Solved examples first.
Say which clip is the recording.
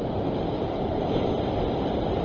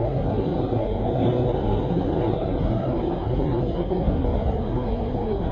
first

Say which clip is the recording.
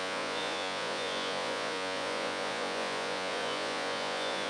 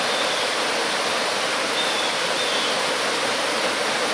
second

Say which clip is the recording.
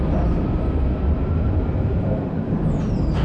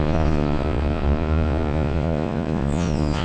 first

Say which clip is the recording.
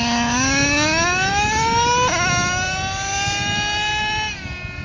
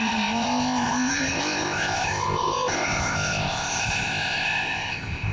first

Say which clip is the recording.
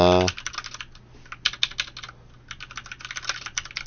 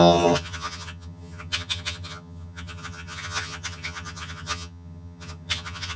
first